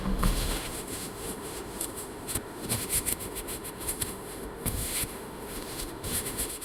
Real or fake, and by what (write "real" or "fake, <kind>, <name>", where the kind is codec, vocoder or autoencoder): fake, autoencoder, DAC-VAE